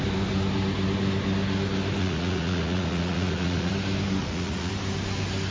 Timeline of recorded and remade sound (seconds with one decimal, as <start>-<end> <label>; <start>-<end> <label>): 0.0-2.0 recorded; 2.0-3.7 remade; 3.7-4.2 recorded; 4.2-4.7 remade; 4.7-5.5 recorded